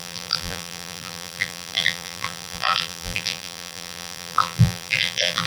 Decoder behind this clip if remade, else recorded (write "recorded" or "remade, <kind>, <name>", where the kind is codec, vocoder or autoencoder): remade, vocoder, BigVGAN v2